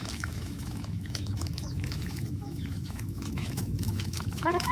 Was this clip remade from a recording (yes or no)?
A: yes